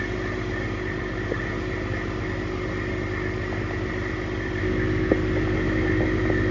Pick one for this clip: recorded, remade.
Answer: recorded